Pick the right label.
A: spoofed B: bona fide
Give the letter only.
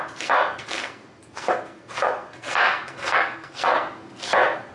A